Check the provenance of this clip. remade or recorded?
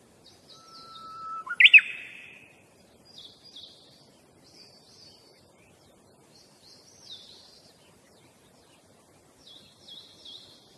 recorded